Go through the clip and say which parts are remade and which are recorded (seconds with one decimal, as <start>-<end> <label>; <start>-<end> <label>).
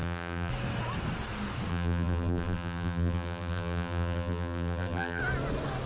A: 0.0-0.5 remade; 0.5-1.7 recorded; 1.7-5.2 remade; 5.2-5.9 recorded